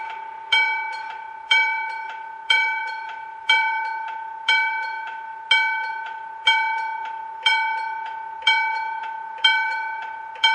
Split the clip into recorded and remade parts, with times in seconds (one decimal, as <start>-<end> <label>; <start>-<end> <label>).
0.0-5.3 remade; 5.3-5.9 recorded; 5.9-10.5 remade